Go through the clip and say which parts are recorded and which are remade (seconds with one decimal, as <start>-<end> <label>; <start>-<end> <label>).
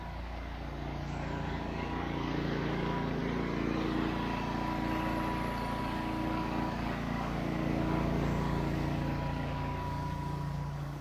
0.0-3.2 remade; 3.2-5.8 recorded; 5.8-11.0 remade